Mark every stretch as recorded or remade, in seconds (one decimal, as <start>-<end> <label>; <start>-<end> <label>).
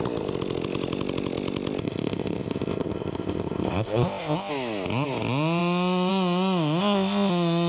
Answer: 0.0-1.8 recorded; 1.8-4.5 remade; 4.5-6.8 recorded; 6.8-7.3 remade; 7.3-7.7 recorded